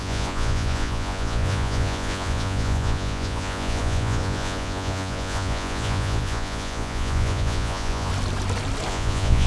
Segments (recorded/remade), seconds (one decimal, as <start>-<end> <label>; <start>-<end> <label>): 0.0-8.1 remade; 8.1-8.9 recorded; 8.9-9.5 remade